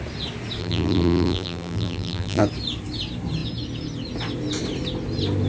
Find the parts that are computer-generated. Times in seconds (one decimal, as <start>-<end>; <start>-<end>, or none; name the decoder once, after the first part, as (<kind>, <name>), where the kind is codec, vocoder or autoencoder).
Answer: 0.6-2.4 (vocoder, BigVGAN v2)